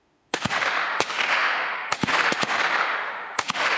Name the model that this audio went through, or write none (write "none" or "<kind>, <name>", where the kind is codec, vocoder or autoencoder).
autoencoder, DAC-VAE